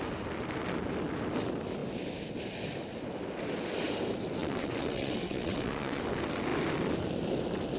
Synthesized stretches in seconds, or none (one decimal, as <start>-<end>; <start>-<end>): 4.4-6.0